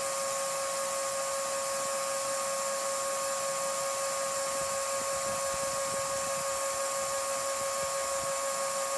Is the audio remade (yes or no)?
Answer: no